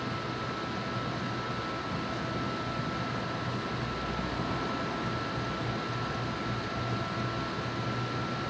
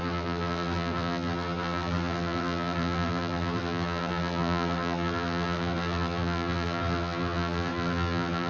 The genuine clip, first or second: first